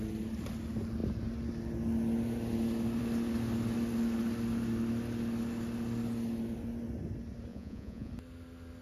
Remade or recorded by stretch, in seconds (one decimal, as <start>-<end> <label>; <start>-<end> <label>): 0.0-7.5 recorded; 7.5-8.1 remade; 8.1-8.8 recorded